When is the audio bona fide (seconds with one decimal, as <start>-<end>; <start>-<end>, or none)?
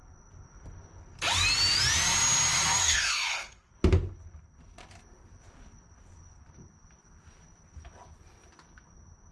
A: 0.0-2.8; 3.7-9.3